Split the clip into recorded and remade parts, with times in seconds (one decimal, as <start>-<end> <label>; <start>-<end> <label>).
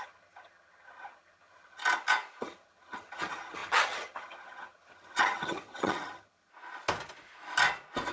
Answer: 0.0-1.8 remade; 1.8-2.4 recorded; 2.4-6.5 remade; 6.5-8.1 recorded